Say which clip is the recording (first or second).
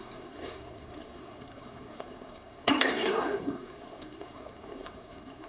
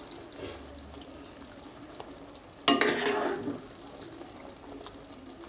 second